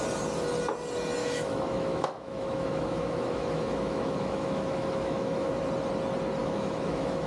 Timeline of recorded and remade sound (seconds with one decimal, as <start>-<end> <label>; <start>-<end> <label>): 0.0-1.2 recorded; 1.2-5.6 remade; 5.6-6.4 recorded; 6.4-7.3 remade